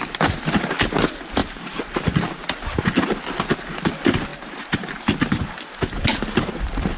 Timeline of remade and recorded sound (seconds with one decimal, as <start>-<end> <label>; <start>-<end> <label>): 0.0-1.4 recorded; 1.4-2.8 remade; 2.8-4.3 recorded; 4.3-5.2 remade; 5.2-7.0 recorded